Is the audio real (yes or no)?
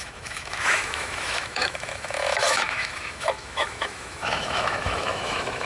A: no